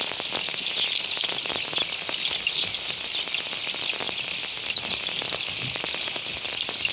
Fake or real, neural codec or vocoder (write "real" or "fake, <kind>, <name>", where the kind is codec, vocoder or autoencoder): real